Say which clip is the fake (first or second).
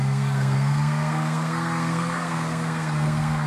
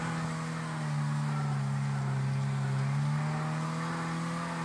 first